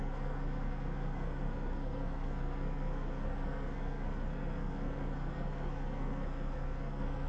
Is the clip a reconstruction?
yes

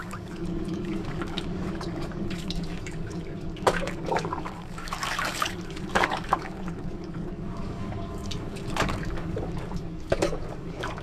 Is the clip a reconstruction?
yes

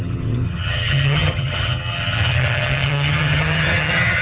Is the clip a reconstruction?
yes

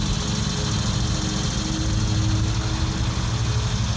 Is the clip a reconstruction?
no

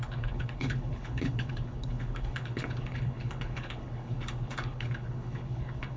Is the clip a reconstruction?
yes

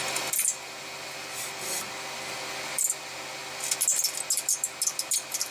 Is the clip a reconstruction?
no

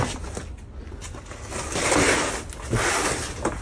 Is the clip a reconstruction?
no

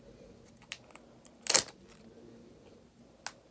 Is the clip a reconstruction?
no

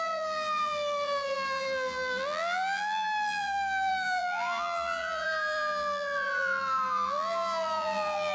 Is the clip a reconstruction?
yes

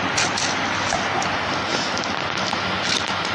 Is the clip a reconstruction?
no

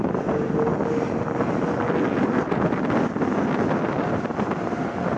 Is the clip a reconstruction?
no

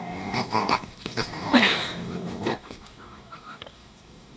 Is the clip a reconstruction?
yes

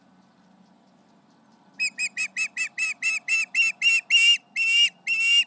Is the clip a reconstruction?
no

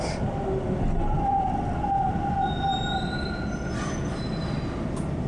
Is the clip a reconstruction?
no